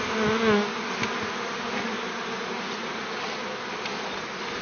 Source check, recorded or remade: recorded